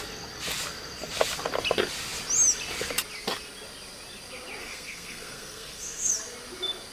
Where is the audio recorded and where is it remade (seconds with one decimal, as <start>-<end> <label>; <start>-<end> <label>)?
0.0-4.6 recorded; 4.6-6.1 remade; 6.1-6.9 recorded